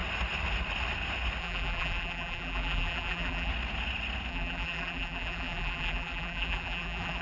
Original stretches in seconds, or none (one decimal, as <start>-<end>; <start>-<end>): 0.0-1.4; 3.5-4.3